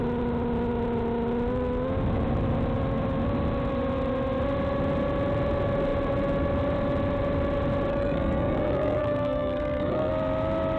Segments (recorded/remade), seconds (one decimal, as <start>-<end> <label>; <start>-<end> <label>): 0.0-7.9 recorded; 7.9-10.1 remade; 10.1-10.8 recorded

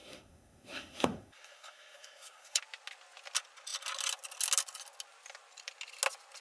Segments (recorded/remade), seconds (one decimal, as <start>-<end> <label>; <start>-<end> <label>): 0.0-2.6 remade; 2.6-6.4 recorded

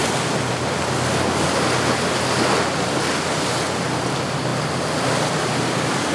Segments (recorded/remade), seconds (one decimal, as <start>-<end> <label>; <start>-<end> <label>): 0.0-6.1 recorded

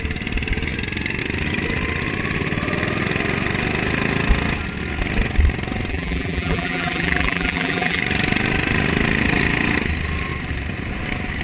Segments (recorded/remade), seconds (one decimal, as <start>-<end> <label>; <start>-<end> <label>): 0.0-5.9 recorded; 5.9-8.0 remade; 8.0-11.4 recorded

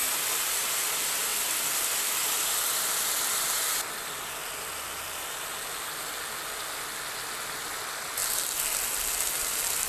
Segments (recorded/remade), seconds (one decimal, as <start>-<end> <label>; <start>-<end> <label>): 0.0-1.3 recorded; 1.3-6.2 remade; 6.2-9.9 recorded

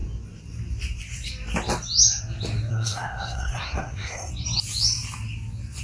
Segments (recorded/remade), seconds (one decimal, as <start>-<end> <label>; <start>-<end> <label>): 0.0-2.7 recorded; 2.7-4.3 remade; 4.3-5.8 recorded

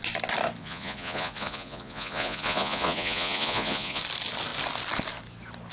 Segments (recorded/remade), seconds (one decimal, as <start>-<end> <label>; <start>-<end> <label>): 0.0-0.6 recorded; 0.6-4.0 remade; 4.0-5.7 recorded

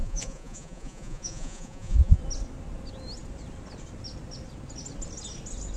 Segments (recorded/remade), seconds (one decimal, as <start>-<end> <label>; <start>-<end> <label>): 0.0-2.2 remade; 2.2-5.8 recorded